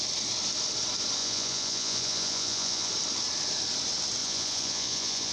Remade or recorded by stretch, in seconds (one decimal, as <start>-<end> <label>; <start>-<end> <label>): 0.0-1.2 recorded; 1.2-2.9 remade; 2.9-4.2 recorded; 4.2-5.3 remade